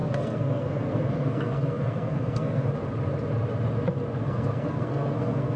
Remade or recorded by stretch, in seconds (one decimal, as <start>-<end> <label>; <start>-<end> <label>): 0.0-2.7 remade; 2.7-4.2 recorded; 4.2-5.6 remade